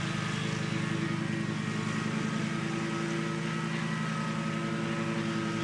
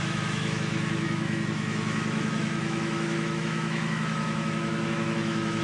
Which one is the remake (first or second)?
second